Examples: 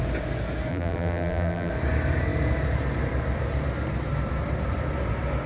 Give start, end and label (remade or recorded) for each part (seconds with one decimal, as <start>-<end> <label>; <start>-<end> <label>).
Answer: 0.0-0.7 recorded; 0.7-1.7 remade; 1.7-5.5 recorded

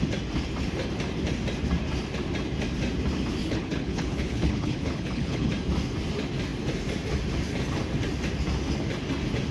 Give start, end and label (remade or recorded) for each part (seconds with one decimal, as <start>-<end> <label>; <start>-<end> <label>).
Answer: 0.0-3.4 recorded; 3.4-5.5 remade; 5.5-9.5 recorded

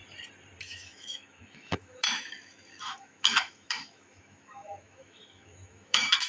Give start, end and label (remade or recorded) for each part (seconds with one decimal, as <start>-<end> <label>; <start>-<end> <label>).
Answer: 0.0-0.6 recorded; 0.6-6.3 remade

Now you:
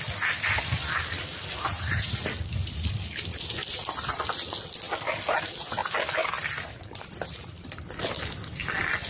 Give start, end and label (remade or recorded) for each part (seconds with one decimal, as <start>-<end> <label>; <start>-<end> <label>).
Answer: 0.0-5.8 remade; 5.8-6.3 recorded; 6.3-9.1 remade

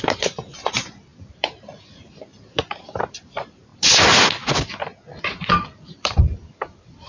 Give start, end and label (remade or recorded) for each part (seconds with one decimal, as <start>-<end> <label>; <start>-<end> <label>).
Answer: 0.0-3.7 remade; 3.7-5.2 recorded; 5.2-7.1 remade

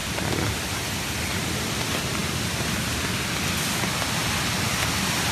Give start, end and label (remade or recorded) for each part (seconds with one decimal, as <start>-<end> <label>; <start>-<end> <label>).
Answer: 0.0-5.3 recorded

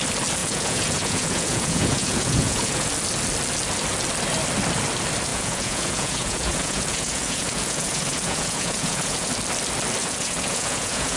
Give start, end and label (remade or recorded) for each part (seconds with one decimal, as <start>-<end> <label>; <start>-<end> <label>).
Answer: 0.0-0.4 recorded; 0.4-2.9 remade; 2.9-5.3 recorded; 5.3-9.3 remade; 9.3-10.0 recorded; 10.0-11.2 remade